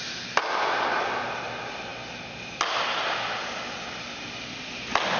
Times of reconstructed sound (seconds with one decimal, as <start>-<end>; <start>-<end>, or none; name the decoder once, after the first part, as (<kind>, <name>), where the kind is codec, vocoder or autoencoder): none